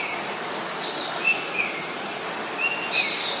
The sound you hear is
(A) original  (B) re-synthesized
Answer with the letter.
A